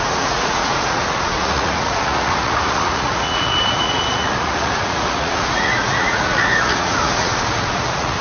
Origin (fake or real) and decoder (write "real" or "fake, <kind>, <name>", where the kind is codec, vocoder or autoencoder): fake, vocoder, Vocos